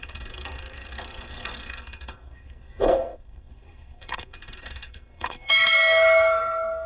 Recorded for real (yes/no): no